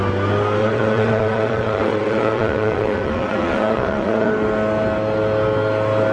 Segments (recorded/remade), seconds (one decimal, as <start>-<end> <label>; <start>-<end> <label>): 0.0-0.6 recorded; 0.6-4.3 remade; 4.3-6.1 recorded